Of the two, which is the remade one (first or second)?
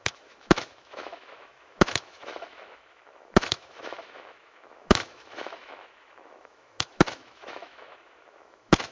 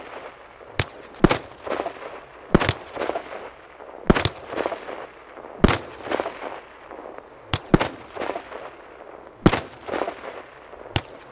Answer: first